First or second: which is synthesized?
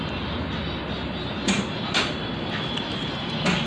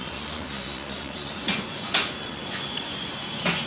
second